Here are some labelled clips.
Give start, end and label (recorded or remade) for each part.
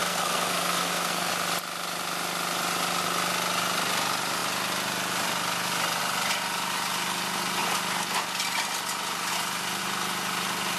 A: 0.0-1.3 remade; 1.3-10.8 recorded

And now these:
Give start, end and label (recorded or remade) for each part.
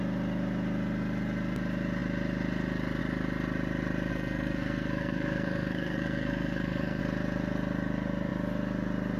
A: 0.0-4.1 recorded; 4.1-7.0 remade; 7.0-9.2 recorded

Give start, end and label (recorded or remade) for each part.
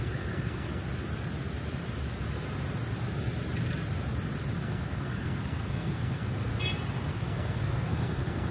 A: 0.0-0.8 remade; 0.8-4.6 recorded; 4.6-6.5 remade; 6.5-7.1 recorded; 7.1-8.5 remade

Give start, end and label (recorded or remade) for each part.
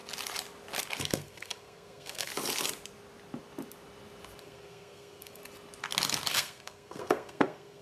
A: 0.0-1.0 recorded; 1.0-2.3 remade; 2.3-4.4 recorded; 4.4-5.4 remade; 5.4-6.3 recorded; 6.3-7.8 remade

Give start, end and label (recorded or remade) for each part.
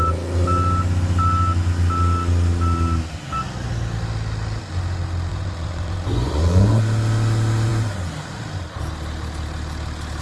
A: 0.0-5.3 recorded; 5.3-6.8 remade; 6.8-10.2 recorded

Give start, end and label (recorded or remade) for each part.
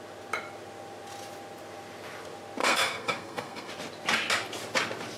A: 0.0-2.6 recorded; 2.6-3.7 remade; 3.7-5.2 recorded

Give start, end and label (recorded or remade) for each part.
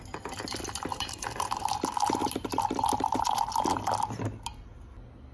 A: 0.0-0.9 recorded; 0.9-1.7 remade; 1.7-2.2 recorded; 2.2-3.5 remade; 3.5-5.3 recorded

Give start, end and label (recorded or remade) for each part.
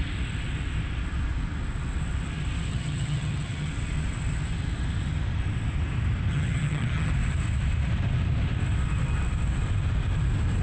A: 0.0-2.7 recorded; 2.7-3.7 remade; 3.7-6.3 recorded; 6.3-7.1 remade; 7.1-10.6 recorded